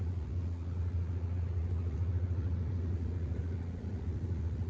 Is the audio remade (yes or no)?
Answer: yes